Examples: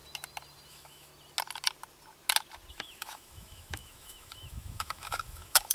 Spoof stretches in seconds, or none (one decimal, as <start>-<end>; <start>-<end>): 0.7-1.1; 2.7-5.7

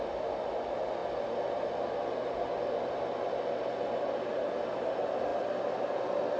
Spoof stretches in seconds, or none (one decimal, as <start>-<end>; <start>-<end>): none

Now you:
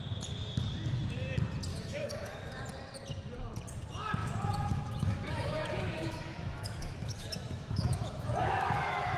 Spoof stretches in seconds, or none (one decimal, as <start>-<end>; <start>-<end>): 1.7-2.6; 4.2-9.2

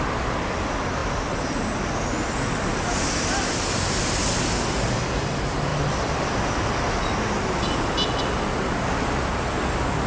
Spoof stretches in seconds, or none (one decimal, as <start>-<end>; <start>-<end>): none